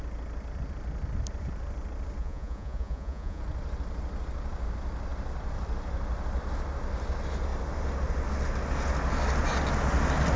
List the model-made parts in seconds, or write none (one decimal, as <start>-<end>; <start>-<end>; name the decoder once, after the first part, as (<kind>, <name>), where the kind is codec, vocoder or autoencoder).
2.2-3.4 (vocoder, Vocos)